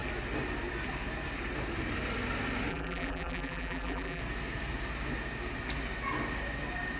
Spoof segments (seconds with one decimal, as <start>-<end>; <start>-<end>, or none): 2.7-4.2